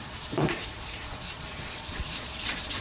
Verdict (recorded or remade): remade